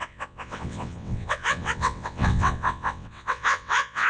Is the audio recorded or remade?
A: remade